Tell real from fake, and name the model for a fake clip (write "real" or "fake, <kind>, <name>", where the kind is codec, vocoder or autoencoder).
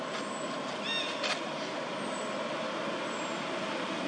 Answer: real